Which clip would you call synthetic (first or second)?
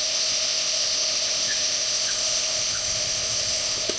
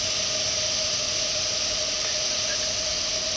first